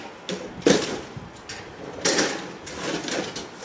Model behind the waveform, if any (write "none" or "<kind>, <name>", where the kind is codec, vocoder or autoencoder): none